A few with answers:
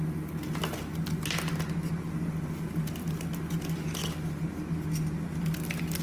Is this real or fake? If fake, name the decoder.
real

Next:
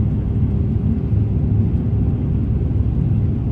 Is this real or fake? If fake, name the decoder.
real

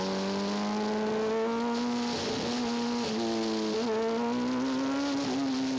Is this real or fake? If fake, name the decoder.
real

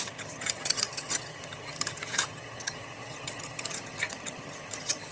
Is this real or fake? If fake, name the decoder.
fake, vocoder, HiFi-GAN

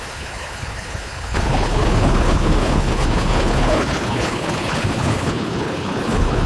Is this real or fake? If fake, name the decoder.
fake, codec, HILCodec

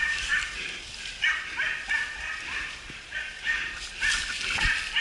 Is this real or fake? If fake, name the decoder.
fake, vocoder, BigVGAN v2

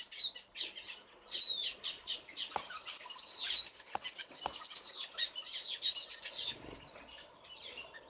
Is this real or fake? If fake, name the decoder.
real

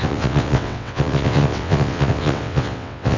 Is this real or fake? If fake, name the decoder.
fake, vocoder, WaveNeXt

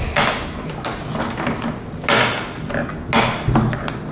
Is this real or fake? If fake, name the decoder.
real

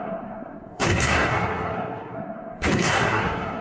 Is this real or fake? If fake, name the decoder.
fake, codec, SNAC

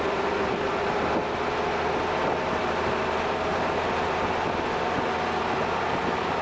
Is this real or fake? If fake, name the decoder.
real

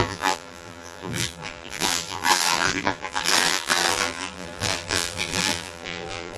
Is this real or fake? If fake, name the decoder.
fake, vocoder, BigVGAN v2